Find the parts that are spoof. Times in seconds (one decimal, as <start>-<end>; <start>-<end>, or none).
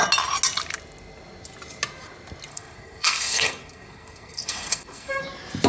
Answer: 2.5-5.2